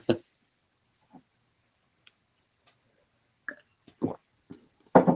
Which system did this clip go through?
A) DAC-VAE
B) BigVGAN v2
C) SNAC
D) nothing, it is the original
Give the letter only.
B